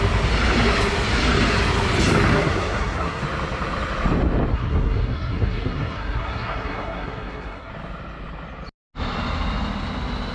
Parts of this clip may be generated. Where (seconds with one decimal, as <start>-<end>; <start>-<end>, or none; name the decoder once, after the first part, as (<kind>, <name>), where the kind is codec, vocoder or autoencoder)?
2.3-3.2 (codec, SNAC); 4.5-7.7